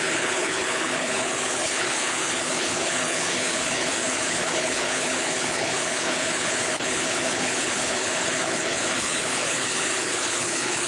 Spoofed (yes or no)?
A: yes